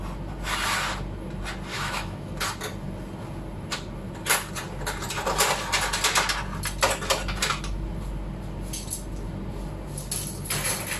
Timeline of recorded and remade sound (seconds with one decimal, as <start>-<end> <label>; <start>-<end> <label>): 0.0-1.7 recorded; 1.7-2.3 remade; 2.3-11.0 recorded